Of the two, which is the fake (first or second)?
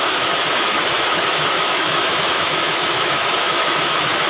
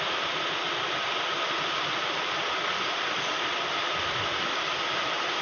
first